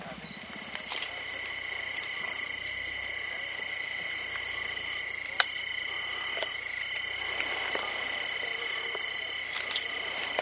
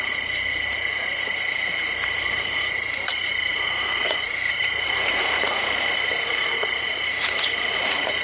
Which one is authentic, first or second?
first